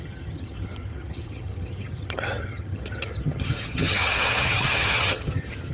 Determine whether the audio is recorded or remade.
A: remade